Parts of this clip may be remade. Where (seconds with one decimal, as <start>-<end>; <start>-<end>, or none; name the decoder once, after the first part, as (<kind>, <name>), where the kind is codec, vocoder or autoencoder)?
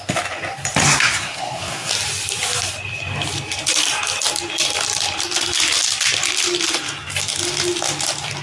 0.8-1.9 (codec, SNAC)